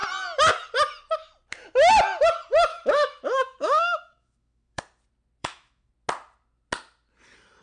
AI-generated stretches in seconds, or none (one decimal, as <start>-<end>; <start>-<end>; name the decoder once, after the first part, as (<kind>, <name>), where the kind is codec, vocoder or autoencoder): 2.7-4.8 (autoencoder, DAC-VAE); 5.4-5.9